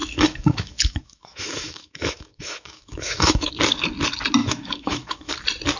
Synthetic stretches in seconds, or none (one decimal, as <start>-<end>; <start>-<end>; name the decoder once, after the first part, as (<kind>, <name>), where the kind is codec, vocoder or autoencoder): 0.0-3.5 (autoencoder, DAC-VAE); 4.4-5.3